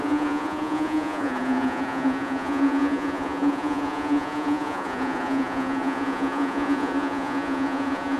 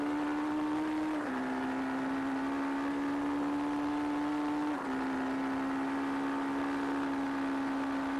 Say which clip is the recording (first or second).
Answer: second